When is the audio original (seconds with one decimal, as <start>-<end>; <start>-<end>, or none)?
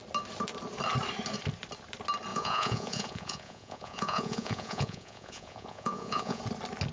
0.0-2.3; 6.4-6.9